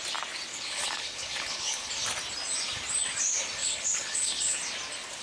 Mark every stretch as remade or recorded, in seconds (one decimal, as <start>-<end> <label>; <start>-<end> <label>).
0.0-0.5 recorded; 0.5-1.9 remade; 1.9-3.6 recorded; 3.6-4.6 remade; 4.6-5.2 recorded